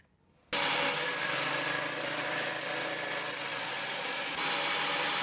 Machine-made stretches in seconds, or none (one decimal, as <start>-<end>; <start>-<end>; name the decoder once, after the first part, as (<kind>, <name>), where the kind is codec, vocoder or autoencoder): 3.5-4.4 (vocoder, Vocos)